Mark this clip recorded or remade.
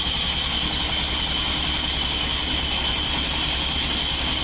recorded